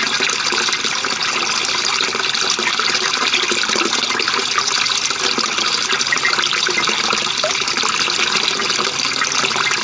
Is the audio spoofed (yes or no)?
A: no